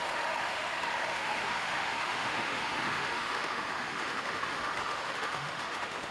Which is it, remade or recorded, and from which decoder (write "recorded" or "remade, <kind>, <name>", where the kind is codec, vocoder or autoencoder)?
remade, autoencoder, DAC-VAE